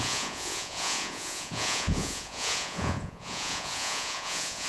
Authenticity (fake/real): fake